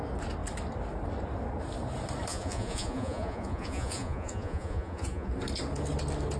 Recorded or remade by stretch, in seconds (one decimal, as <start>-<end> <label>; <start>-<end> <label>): 0.0-2.3 recorded; 2.3-5.3 remade; 5.3-6.4 recorded